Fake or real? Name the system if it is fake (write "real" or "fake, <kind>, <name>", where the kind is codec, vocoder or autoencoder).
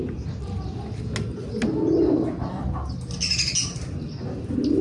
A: real